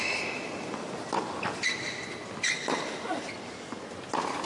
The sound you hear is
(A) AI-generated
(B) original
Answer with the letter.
B